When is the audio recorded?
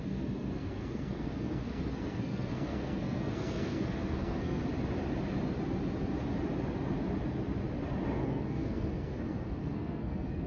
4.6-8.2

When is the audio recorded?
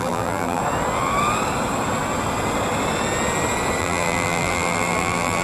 0.6-3.8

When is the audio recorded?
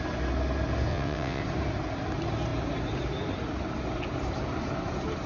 0.0-0.9; 1.4-5.3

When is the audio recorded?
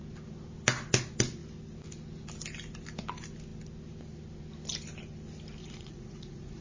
0.0-5.6